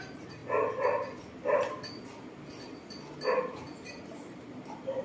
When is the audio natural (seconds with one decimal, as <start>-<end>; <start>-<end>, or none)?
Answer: 0.4-3.4